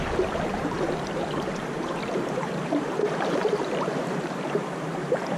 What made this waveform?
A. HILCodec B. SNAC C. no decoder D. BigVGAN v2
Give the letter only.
D